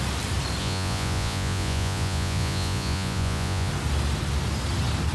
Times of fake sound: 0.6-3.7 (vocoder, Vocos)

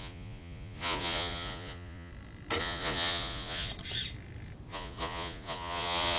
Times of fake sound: 0.0-2.1 (vocoder, Vocos); 2.6-3.7; 4.7-6.2

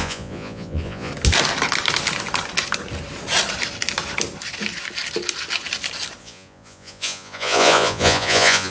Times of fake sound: 0.0-1.1 (vocoder, Vocos); 6.2-8.7

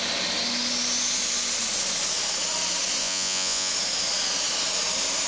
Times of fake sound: 3.0-3.7 (vocoder, Vocos)

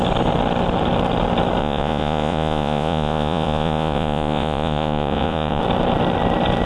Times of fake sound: 1.6-5.6 (vocoder, Vocos)